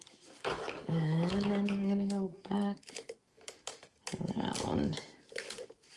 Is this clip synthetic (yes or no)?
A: yes